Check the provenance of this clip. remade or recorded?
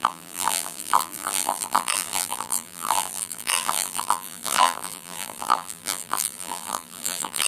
remade